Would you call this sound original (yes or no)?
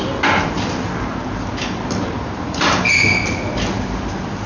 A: yes